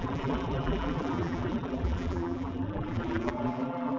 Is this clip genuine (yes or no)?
no